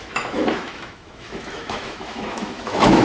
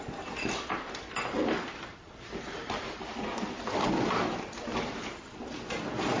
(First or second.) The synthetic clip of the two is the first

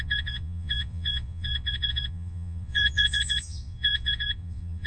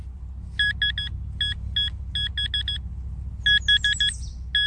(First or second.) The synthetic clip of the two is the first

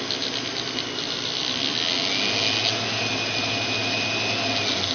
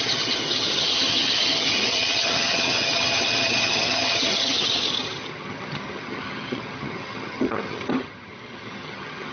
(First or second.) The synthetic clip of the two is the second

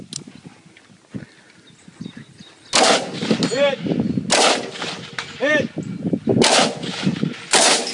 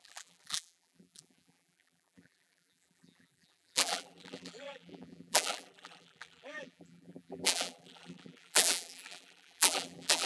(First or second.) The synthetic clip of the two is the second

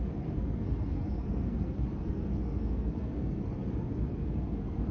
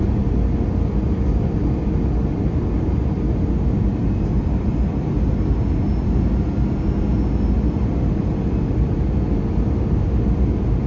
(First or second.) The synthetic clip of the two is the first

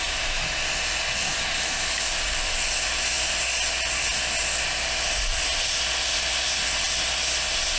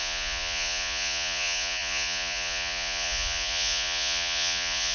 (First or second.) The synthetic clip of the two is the second